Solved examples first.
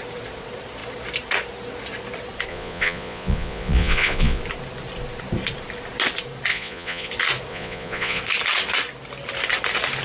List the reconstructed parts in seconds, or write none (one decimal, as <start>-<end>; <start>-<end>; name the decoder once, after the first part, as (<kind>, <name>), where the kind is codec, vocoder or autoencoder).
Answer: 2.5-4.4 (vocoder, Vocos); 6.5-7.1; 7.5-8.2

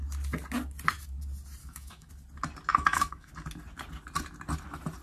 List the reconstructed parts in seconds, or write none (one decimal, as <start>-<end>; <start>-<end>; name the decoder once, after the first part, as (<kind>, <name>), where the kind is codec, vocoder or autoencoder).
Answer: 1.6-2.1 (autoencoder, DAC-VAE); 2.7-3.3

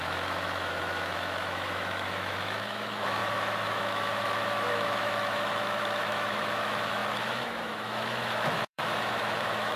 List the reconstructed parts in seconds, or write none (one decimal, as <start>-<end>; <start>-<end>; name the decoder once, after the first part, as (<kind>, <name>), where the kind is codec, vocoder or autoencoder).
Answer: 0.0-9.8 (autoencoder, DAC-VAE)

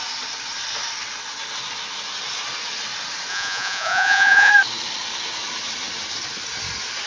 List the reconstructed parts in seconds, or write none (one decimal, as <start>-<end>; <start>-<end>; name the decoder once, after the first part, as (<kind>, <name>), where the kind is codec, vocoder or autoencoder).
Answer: 3.3-4.5 (vocoder, Vocos)

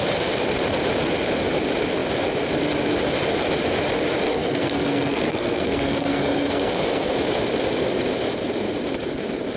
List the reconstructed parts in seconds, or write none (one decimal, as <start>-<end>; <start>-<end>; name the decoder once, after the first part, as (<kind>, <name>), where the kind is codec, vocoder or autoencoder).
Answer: 4.3-7.1 (codec, SNAC)

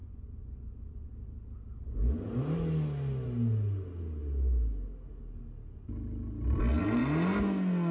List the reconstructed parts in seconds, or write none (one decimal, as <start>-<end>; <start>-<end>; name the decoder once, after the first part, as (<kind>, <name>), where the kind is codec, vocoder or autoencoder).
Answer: 0.0-1.1 (vocoder, Vocos)

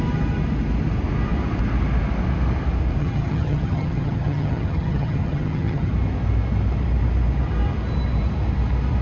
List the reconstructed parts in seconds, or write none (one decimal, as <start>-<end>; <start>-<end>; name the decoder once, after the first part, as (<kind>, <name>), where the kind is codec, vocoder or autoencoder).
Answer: 3.0-5.9 (vocoder, HiFi-GAN)